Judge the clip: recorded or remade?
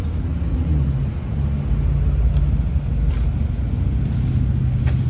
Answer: recorded